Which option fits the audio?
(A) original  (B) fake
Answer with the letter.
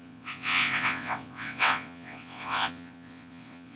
B